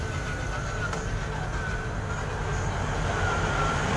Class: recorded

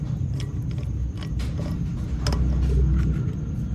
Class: recorded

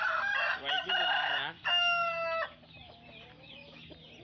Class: recorded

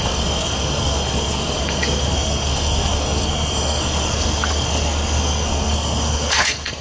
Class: remade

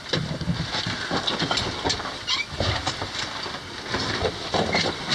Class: recorded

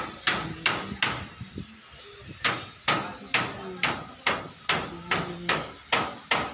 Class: recorded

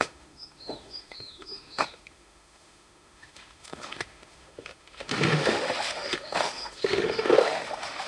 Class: remade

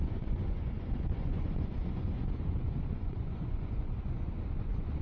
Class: remade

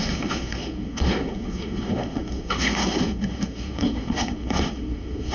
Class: remade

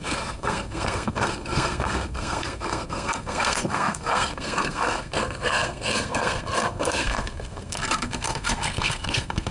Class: remade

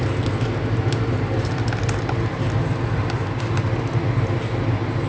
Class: recorded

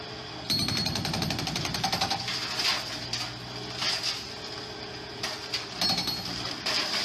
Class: recorded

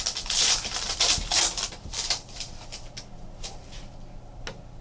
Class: recorded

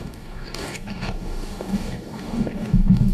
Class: remade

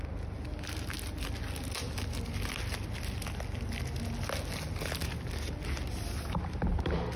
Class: recorded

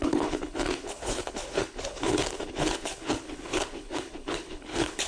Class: remade